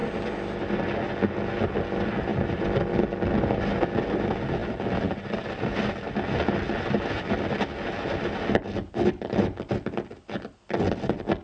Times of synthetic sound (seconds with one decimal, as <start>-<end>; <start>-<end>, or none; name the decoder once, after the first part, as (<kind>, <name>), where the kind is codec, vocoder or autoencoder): 0.0-0.6 (vocoder, BigVGAN v2); 2.3-2.9; 4.6-5.8